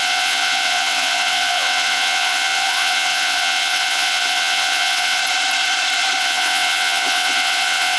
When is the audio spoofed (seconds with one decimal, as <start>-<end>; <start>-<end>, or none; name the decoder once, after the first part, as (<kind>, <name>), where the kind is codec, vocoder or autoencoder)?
0.0-5.2 (vocoder, WaveNeXt); 6.2-8.0